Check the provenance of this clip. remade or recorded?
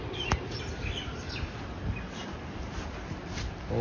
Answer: recorded